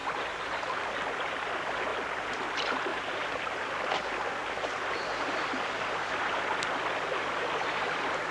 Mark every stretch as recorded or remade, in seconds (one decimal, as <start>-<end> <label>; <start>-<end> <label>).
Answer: 0.0-1.9 recorded; 1.9-2.5 remade; 2.5-2.9 recorded; 2.9-3.7 remade; 3.7-8.3 recorded